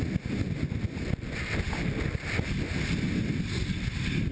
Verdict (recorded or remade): recorded